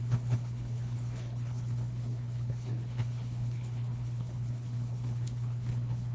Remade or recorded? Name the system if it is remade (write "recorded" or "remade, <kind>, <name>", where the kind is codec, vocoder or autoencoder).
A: remade, codec, HILCodec